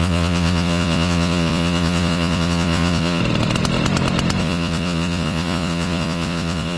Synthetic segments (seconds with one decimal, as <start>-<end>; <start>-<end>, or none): 0.0-3.2; 4.4-6.8